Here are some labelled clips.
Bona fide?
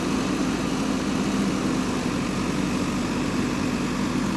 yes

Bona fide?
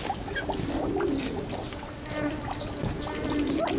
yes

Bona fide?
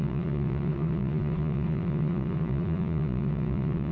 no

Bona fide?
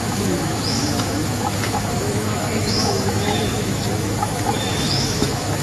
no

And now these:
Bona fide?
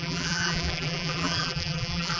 no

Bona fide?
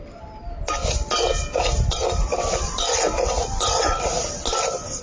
yes